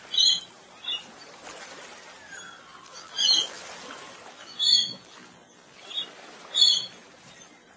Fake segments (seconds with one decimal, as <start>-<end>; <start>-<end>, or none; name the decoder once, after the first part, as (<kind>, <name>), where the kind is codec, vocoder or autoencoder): 2.7-3.6 (vocoder, BigVGAN v2); 4.3-5.8